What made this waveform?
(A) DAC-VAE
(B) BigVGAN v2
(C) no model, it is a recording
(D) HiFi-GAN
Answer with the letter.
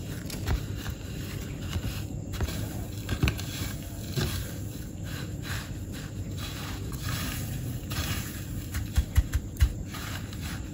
B